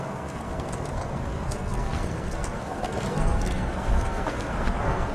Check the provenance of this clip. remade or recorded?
remade